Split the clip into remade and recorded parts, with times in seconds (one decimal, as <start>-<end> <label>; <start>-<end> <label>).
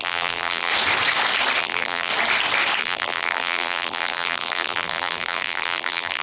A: 0.0-0.7 remade; 0.7-1.6 recorded; 1.6-2.1 remade; 2.1-2.8 recorded; 2.8-6.2 remade